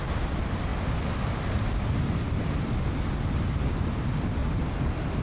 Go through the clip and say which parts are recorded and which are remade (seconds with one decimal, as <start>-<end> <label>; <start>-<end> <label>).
0.0-0.7 remade; 0.7-3.2 recorded; 3.2-4.4 remade; 4.4-5.2 recorded